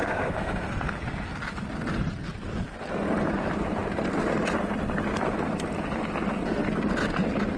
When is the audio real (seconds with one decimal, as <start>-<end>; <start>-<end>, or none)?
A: 0.9-7.6